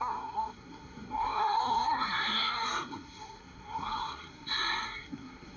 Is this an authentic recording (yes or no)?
no